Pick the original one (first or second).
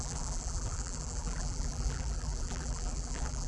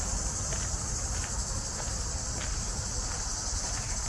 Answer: second